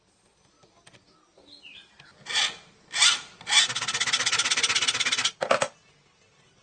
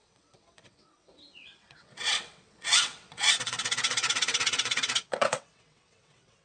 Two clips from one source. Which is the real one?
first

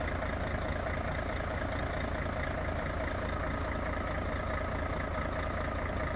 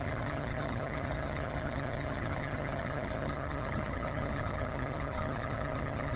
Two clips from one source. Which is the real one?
first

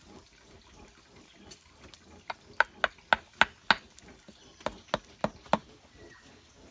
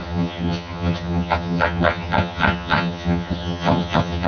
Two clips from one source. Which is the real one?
first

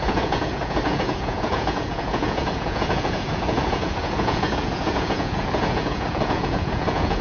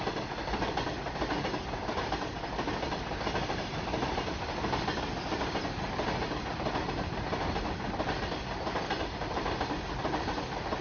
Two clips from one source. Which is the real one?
second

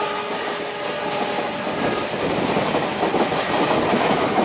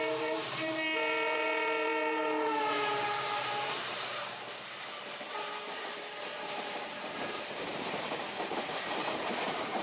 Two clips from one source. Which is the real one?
first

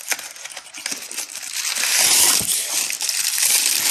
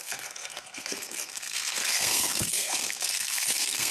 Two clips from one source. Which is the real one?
first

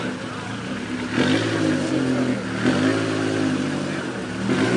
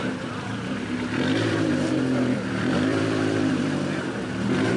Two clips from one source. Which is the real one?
first